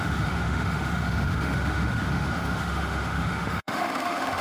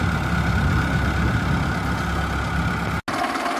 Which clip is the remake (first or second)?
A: first